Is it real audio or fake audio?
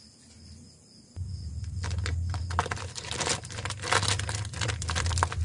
fake